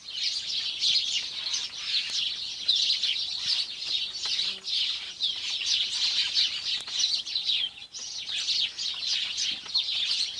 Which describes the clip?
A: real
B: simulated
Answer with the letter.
A